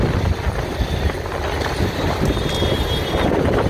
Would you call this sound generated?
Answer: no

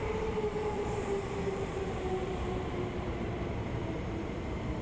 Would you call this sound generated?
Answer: yes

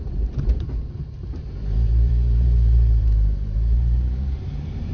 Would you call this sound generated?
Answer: yes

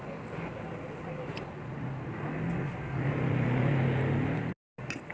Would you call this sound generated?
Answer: no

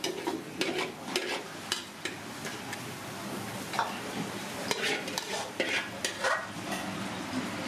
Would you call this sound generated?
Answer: no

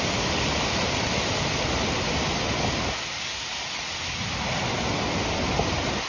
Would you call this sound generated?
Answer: no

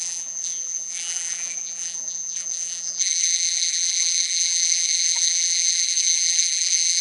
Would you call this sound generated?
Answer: yes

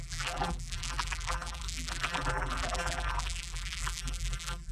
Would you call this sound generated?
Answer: yes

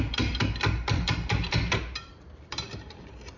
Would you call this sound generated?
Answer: yes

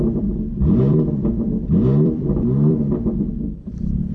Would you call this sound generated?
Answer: yes